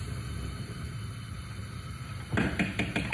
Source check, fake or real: real